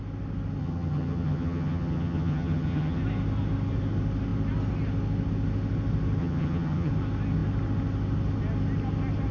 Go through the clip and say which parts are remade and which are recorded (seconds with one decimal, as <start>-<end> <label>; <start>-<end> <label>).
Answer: 0.0-0.6 recorded; 0.6-3.0 remade; 3.0-6.2 recorded; 6.2-6.9 remade; 6.9-9.3 recorded